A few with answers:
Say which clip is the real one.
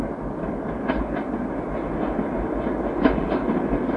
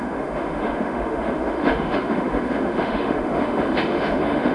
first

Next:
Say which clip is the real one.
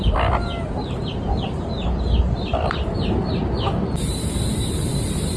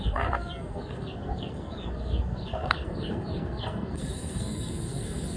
first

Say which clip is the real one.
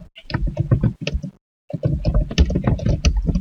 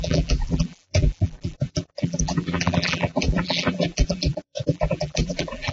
first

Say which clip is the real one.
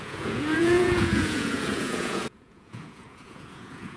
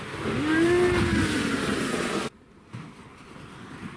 second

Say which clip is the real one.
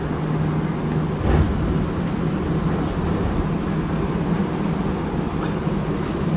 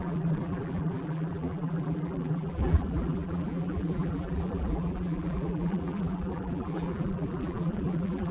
first